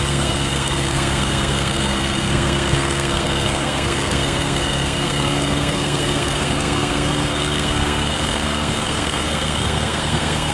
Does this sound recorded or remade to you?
remade